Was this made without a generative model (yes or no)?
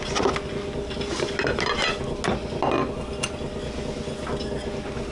yes